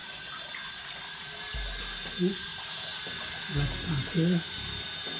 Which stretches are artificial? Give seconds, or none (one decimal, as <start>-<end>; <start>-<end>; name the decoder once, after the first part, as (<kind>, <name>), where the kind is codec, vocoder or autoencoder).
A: none